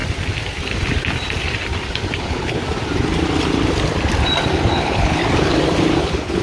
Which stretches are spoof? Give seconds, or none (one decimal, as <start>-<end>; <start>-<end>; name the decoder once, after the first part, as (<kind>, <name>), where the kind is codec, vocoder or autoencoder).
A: 2.2-2.6 (codec, HILCodec); 4.7-5.2; 6.0-6.4